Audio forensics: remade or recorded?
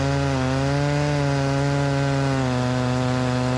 recorded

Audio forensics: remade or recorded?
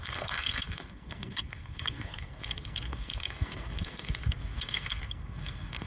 remade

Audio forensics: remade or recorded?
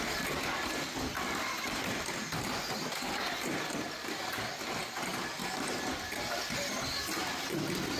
recorded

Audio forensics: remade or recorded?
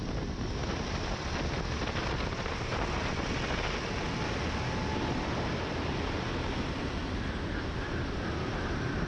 recorded